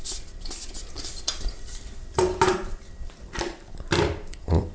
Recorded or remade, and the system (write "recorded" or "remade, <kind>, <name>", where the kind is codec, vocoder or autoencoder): recorded